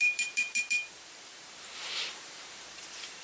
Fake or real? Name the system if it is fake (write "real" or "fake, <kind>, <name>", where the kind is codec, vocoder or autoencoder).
fake, vocoder, BigVGAN v2